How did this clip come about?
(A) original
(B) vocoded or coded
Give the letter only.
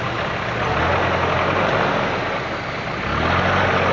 A